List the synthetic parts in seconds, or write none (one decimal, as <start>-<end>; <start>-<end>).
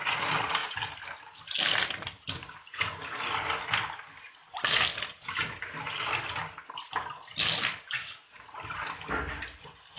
none